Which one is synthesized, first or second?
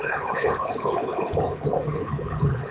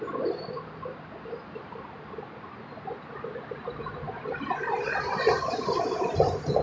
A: first